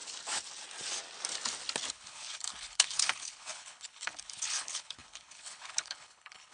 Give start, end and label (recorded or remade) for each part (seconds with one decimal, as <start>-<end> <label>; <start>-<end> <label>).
0.0-1.9 recorded; 1.9-6.5 remade